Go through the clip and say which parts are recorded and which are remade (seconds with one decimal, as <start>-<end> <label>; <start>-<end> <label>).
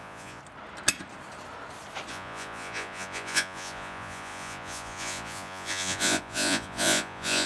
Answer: 0.0-0.4 remade; 0.4-2.1 recorded; 2.1-7.5 remade